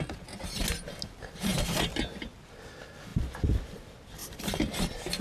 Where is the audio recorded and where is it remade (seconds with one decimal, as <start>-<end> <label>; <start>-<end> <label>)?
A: 0.0-4.2 recorded; 4.2-4.8 remade; 4.8-5.2 recorded